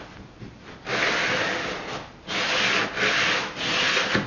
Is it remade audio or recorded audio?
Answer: recorded